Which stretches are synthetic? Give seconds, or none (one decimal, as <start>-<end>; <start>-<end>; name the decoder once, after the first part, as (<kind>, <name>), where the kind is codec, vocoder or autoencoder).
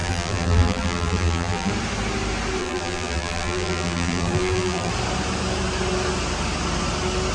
0.0-1.7 (vocoder, BigVGAN v2); 2.6-4.9